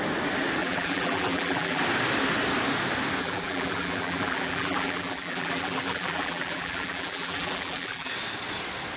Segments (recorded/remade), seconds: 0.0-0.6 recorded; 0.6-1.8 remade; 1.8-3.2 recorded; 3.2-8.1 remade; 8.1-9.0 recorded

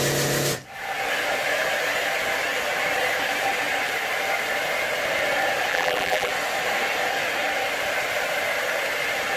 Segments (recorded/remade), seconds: 0.0-5.7 recorded; 5.7-6.3 remade; 6.3-9.4 recorded

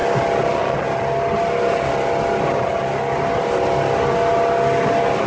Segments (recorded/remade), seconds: 0.0-5.3 recorded

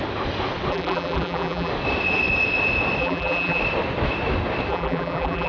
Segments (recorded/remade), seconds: 0.0-0.7 recorded; 0.7-1.7 remade; 1.7-3.0 recorded; 3.0-3.6 remade; 3.6-4.7 recorded; 4.7-5.5 remade